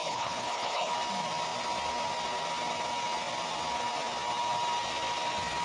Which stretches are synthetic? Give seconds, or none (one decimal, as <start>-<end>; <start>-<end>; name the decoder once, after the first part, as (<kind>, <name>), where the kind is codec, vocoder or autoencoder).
0.0-0.9 (codec, HILCodec)